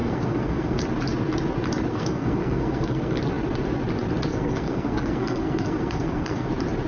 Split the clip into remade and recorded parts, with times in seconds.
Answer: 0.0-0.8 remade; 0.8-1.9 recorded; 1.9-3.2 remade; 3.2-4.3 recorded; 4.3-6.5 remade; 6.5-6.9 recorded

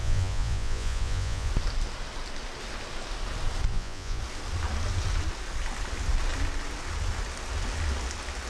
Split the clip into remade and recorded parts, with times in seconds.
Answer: 0.0-1.5 remade; 1.5-3.7 recorded; 3.7-4.2 remade; 4.2-8.5 recorded

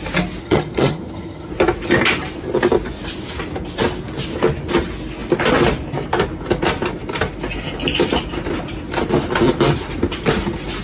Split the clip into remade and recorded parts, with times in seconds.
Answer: 0.0-0.4 recorded; 0.4-1.5 remade; 1.5-10.8 recorded

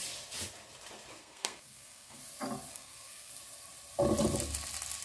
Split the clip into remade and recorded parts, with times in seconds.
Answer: 0.0-1.2 recorded; 1.2-2.2 remade; 2.2-2.7 recorded; 2.7-3.3 remade; 3.3-5.0 recorded

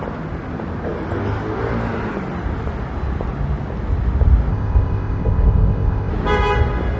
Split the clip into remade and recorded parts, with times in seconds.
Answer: 0.0-4.5 recorded; 4.5-6.1 remade; 6.1-7.0 recorded